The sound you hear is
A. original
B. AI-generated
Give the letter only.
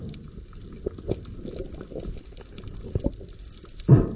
A